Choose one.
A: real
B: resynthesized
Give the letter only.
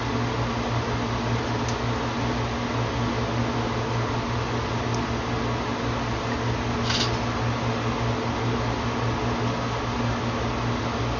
A